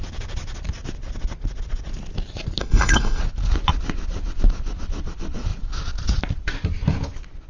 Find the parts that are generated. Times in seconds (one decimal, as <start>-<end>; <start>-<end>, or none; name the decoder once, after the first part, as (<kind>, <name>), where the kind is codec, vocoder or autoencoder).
2.6-3.2 (codec, SNAC)